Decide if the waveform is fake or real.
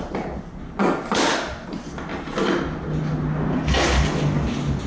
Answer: real